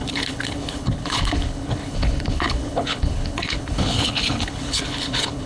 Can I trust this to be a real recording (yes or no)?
no